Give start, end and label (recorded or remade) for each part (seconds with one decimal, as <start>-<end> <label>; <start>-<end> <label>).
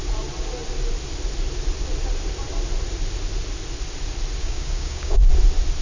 0.0-4.4 recorded; 4.4-5.2 remade; 5.2-5.8 recorded